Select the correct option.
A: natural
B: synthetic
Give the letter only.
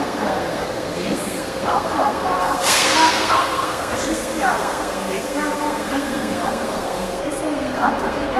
B